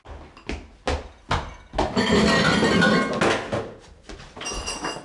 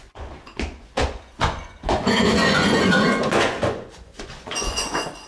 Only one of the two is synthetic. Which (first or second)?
second